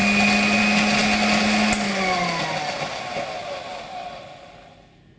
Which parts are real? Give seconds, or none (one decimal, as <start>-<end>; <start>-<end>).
0.0-5.2